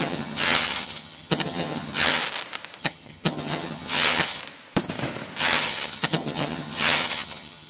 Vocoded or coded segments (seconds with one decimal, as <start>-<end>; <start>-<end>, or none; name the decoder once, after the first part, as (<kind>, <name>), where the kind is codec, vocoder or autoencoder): 0.0-2.2 (vocoder, HiFi-GAN); 2.8-4.4; 5.4-7.7